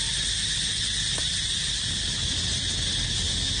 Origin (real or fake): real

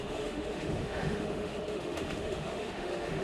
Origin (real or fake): fake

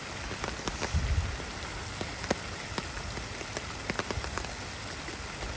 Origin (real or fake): real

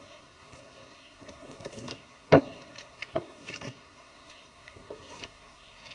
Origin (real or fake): fake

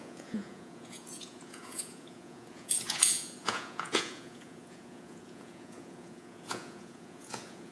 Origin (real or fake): fake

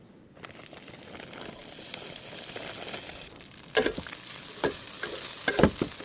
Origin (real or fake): real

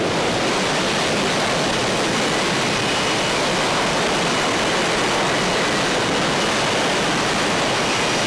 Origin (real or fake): real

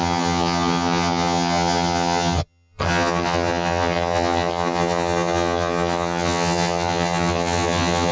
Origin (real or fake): fake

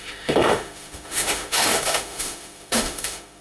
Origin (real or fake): fake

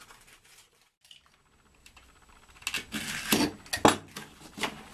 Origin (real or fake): real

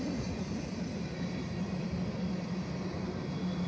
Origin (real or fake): real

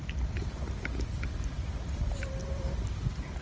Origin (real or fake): real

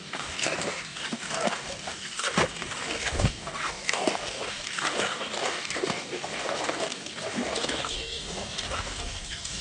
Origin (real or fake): fake